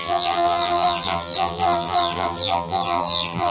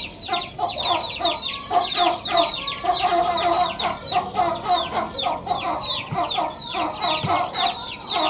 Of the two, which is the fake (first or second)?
first